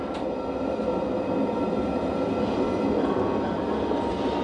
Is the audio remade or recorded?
recorded